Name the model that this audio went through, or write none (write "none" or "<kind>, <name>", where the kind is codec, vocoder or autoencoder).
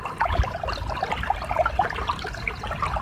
none